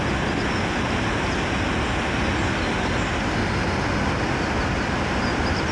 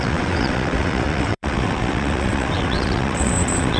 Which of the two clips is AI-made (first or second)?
second